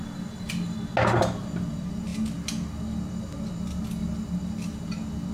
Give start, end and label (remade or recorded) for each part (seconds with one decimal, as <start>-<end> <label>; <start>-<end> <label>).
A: 0.0-5.3 recorded